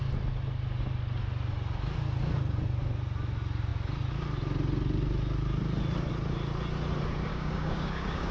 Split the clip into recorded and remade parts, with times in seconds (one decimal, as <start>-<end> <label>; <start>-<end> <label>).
0.0-7.3 recorded; 7.3-8.3 remade